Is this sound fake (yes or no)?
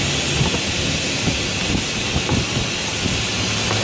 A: no